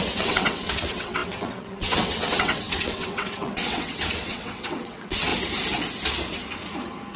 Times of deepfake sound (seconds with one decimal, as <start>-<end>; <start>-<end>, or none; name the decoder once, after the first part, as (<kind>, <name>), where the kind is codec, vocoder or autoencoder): 0.0-5.3 (vocoder, WaveNeXt)